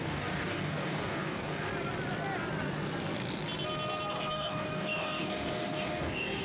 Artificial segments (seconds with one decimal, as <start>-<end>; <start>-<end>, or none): 0.0-1.7; 4.1-6.4